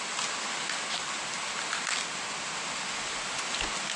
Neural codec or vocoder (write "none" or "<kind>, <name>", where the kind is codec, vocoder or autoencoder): none